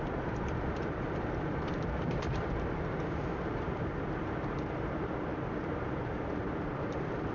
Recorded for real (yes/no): no